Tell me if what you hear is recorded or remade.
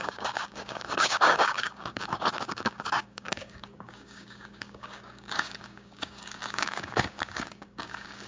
remade